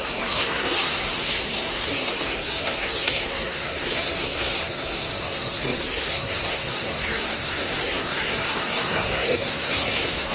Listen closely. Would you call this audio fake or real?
fake